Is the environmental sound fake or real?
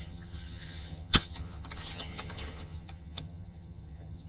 fake